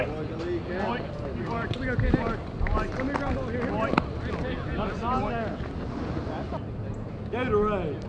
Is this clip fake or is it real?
real